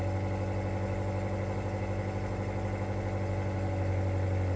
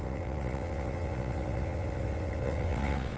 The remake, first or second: second